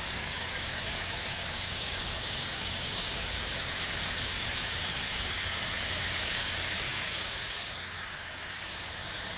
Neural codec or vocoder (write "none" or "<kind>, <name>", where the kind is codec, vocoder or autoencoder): codec, DAC